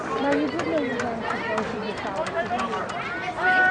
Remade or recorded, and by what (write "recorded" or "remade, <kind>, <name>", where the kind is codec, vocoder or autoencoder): recorded